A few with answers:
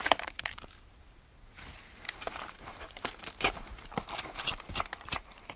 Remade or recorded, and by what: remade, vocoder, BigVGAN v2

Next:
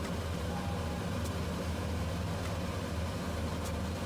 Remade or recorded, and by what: recorded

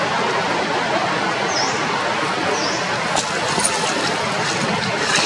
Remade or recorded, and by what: recorded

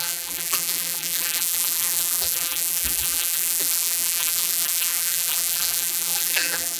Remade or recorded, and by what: remade, vocoder, BigVGAN v2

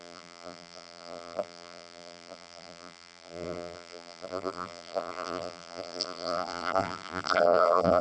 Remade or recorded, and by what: remade, vocoder, BigVGAN v2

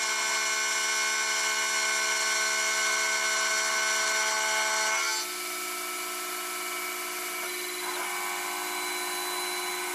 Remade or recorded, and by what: recorded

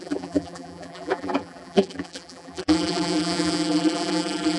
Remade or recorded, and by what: remade, vocoder, BigVGAN v2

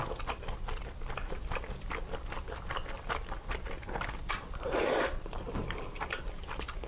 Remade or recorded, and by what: remade, vocoder, BigVGAN v2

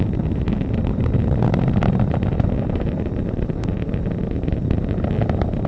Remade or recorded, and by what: remade, vocoder, BigVGAN v2